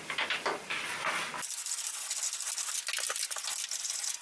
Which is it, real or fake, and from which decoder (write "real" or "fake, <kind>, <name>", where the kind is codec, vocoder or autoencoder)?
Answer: real